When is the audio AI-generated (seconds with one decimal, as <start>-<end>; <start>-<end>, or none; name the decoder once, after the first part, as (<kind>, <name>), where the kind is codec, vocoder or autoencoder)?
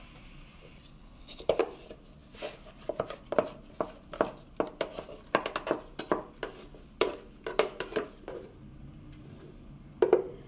1.0-1.6 (codec, HILCodec)